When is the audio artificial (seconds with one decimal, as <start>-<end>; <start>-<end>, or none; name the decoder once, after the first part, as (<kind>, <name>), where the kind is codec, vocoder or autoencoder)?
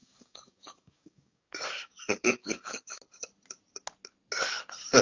0.0-3.0 (codec, DAC)